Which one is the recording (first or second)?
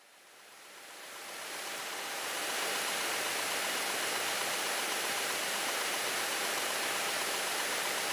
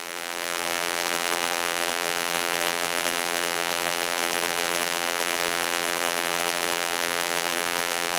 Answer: first